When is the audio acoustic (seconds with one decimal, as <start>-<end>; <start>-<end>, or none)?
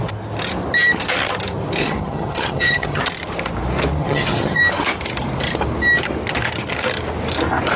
0.0-1.8; 3.0-4.0; 4.6-7.8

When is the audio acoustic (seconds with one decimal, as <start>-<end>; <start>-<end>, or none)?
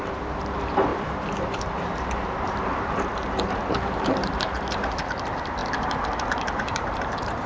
none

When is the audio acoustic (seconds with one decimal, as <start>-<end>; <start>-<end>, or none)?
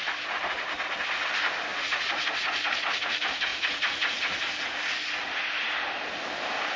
0.0-1.7; 2.2-3.5; 4.4-6.8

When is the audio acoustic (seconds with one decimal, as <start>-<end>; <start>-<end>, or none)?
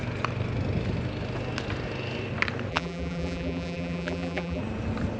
0.0-2.7; 4.6-5.2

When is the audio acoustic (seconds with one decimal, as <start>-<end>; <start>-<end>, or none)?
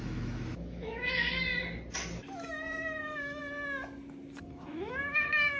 1.5-2.2; 3.4-4.4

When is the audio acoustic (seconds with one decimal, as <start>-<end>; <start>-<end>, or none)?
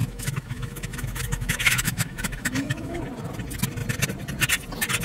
3.0-5.0